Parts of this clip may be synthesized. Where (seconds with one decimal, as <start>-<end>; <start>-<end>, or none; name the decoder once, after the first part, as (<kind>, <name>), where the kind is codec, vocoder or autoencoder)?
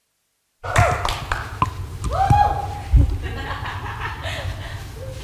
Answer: none